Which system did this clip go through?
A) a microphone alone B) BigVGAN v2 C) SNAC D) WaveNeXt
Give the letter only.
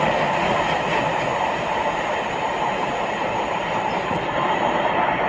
A